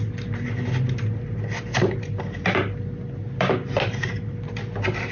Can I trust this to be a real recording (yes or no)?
yes